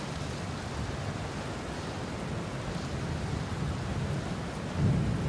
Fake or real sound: real